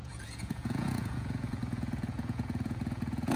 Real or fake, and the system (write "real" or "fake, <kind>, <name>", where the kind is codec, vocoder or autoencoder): fake, vocoder, Vocos